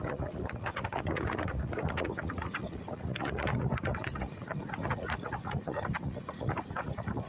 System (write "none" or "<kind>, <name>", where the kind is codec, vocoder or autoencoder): vocoder, Vocos